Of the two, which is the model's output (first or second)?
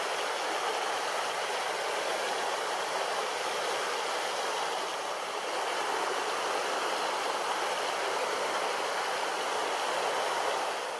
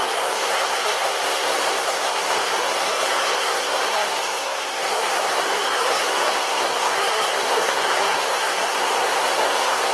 second